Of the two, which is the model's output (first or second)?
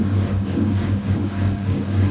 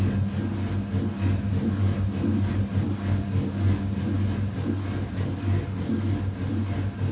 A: first